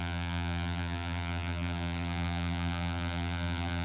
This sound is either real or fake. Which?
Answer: fake